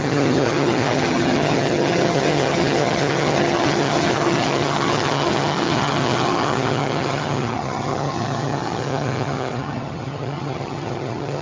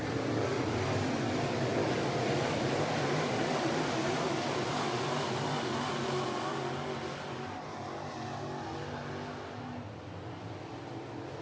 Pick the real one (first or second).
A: second